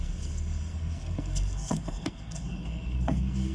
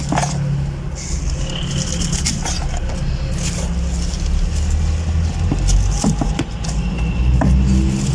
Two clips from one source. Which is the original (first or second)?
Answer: second